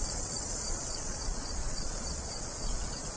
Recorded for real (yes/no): no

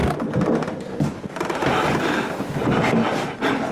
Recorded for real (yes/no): yes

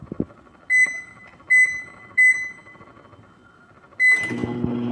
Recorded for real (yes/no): yes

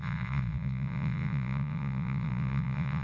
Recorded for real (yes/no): no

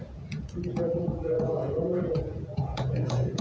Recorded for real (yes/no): no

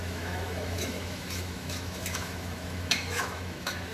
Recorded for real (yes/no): no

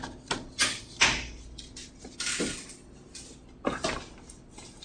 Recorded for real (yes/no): yes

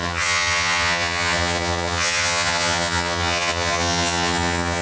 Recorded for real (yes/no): no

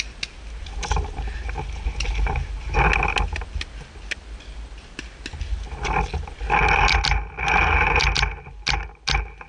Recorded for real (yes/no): yes